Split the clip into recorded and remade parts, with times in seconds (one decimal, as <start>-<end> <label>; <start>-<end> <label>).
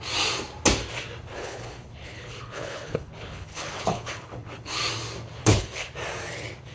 0.0-1.3 recorded; 1.3-4.8 remade; 4.8-5.4 recorded; 5.4-5.9 remade; 5.9-6.7 recorded